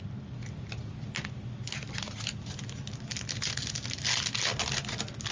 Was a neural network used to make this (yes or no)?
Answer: no